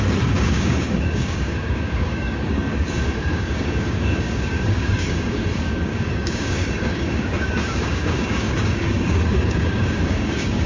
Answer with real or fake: fake